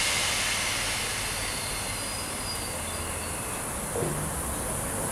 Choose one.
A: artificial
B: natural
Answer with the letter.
B